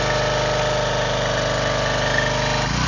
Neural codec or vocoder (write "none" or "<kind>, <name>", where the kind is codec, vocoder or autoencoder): none